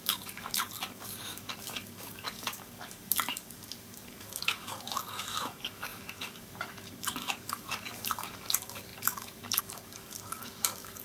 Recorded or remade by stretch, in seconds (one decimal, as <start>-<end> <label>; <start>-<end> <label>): 0.0-11.0 remade